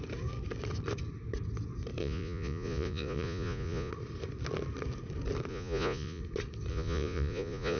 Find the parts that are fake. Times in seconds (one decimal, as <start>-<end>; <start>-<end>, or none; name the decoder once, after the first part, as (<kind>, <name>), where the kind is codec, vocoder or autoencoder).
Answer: 2.0-3.9 (vocoder, Vocos); 5.5-6.2; 6.7-7.8